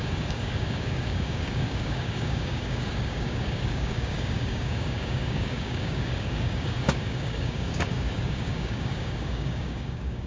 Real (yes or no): no